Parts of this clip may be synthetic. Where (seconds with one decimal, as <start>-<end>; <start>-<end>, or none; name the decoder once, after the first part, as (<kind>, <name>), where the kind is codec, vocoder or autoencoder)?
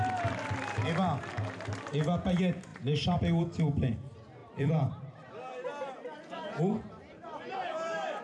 2.7-3.2 (vocoder, BigVGAN v2); 4.4-8.2